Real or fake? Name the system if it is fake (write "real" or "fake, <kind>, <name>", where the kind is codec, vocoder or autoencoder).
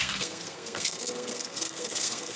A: fake, codec, SNAC